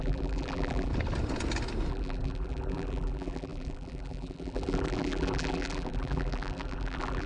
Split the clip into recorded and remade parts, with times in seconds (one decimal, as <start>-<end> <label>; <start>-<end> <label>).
0.0-0.9 remade; 0.9-1.9 recorded; 1.9-7.3 remade